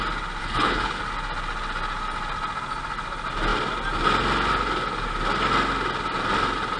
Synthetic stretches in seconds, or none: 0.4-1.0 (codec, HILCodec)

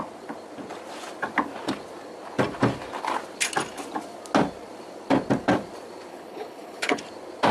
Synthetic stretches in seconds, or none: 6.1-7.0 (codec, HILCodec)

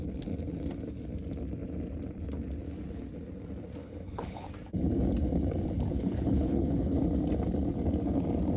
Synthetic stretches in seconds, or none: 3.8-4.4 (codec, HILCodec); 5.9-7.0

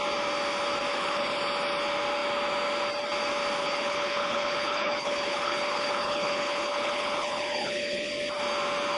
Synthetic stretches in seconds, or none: 0.9-1.4 (codec, HILCodec); 3.6-8.1

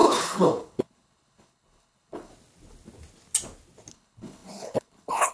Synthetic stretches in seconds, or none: 0.0-2.3 (codec, HILCodec); 3.9-5.3

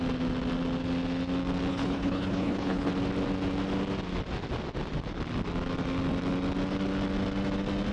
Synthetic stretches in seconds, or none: 1.7-2.9 (codec, HILCodec)